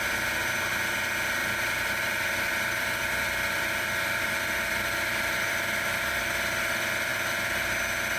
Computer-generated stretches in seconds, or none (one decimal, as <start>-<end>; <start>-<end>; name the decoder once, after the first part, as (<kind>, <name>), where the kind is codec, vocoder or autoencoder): 1.4-6.2 (vocoder, BigVGAN v2); 7.1-7.7